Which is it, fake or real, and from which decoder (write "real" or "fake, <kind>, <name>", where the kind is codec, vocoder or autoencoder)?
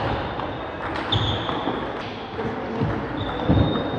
real